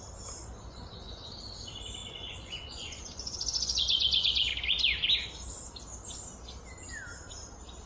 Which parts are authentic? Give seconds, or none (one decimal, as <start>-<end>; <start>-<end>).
0.0-0.4; 1.3-2.0; 4.5-7.9

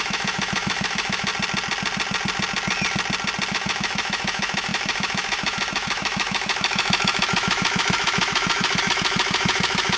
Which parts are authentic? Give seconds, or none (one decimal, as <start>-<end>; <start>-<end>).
1.3-3.5